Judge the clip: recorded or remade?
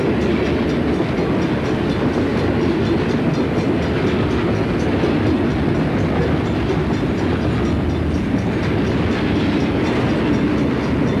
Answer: recorded